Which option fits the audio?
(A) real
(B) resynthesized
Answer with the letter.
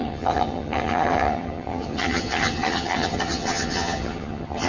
B